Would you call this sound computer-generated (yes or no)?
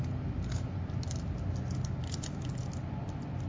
no